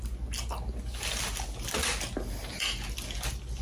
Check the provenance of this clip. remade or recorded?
recorded